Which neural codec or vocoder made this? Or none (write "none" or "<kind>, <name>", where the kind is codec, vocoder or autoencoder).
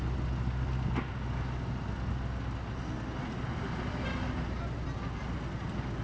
none